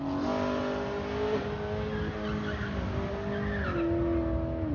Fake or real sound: real